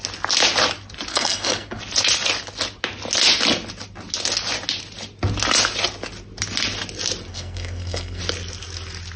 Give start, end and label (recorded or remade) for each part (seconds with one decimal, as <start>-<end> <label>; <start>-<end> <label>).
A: 0.0-1.1 recorded; 1.1-1.8 remade; 1.8-7.3 recorded; 7.3-8.2 remade; 8.2-9.2 recorded